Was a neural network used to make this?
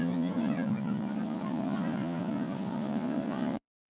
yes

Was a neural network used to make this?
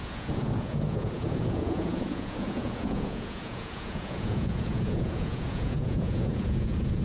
yes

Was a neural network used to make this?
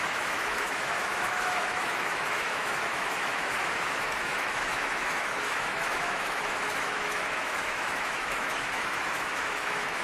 yes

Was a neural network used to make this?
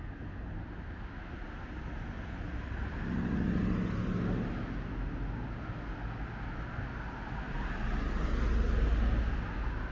no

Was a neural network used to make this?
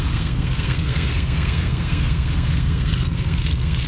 yes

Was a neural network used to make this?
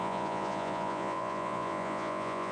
yes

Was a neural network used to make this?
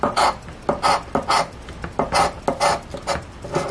no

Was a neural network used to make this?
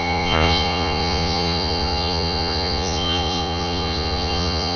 yes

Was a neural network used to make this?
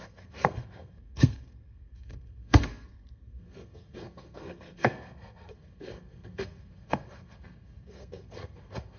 yes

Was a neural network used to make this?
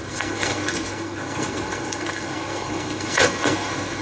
yes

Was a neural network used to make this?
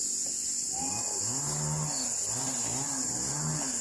no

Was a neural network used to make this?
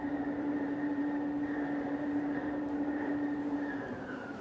yes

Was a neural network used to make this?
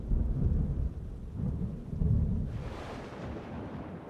no